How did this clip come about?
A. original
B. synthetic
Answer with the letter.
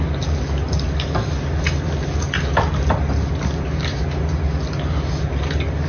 A